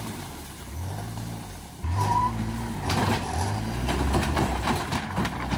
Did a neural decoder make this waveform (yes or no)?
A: yes